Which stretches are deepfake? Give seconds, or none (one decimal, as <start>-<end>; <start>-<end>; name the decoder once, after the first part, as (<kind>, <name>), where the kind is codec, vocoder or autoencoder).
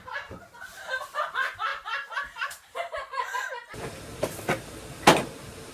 1.7-3.0 (vocoder, BigVGAN v2)